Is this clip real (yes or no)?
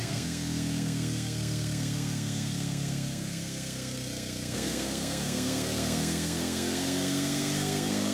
no